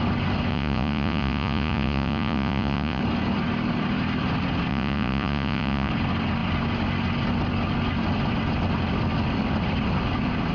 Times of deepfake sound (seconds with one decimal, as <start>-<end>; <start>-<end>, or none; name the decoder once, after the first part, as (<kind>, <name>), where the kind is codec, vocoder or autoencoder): 0.5-3.0 (vocoder, Vocos); 4.7-5.9